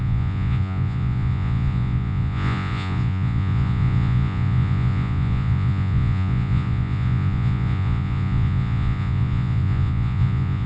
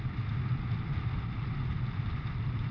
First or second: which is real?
second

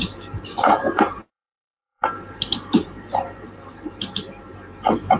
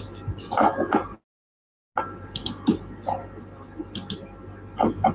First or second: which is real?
second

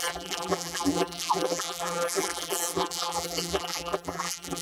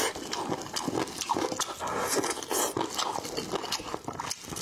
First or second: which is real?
second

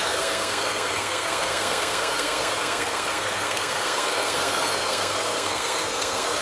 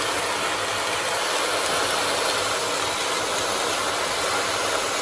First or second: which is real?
second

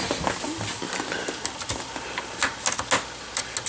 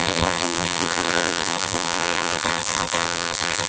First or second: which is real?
first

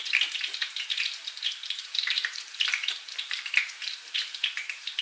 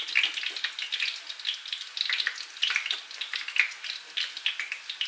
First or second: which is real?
second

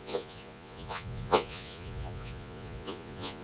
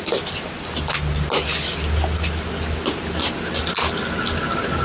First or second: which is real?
second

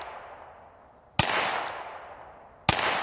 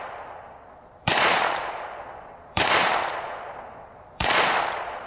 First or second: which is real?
first